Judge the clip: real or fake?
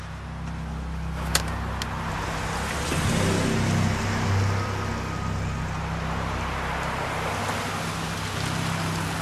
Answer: real